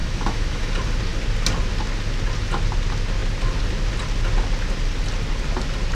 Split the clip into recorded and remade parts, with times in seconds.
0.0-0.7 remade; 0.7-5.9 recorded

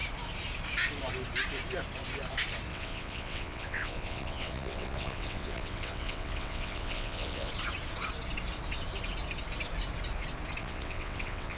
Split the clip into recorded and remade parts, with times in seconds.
0.0-2.7 recorded; 2.7-7.5 remade; 7.5-10.6 recorded; 10.6-11.6 remade